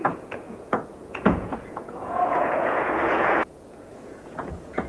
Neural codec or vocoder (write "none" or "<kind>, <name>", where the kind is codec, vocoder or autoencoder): vocoder, Vocos